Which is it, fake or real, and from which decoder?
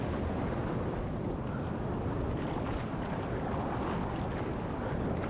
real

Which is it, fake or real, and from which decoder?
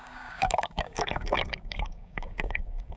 fake, codec, DAC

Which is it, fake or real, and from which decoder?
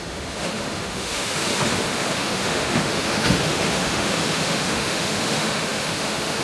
fake, autoencoder, DAC-VAE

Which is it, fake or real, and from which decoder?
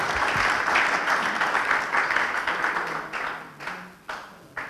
real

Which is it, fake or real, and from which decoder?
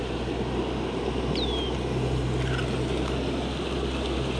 real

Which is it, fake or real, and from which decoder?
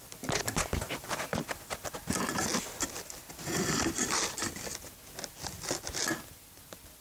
real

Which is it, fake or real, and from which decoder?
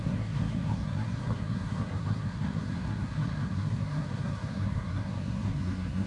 fake, codec, SNAC